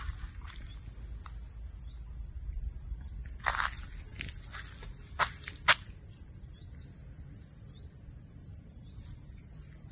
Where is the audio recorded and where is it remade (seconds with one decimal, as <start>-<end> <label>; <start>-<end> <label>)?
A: 0.0-9.9 recorded